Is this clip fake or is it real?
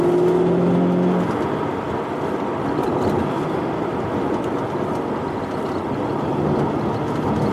real